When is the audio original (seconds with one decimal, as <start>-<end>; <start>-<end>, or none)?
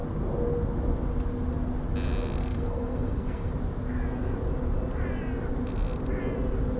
0.0-2.4; 3.5-6.8